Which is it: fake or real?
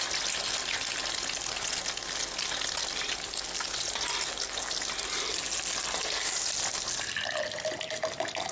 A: real